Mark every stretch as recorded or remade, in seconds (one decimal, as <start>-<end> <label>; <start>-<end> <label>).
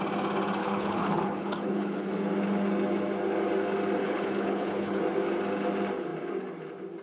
0.0-0.6 recorded; 0.6-2.1 remade; 2.1-4.0 recorded; 4.0-5.0 remade; 5.0-7.0 recorded